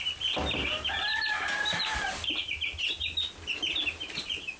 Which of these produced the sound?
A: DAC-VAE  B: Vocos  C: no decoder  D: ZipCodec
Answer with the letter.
C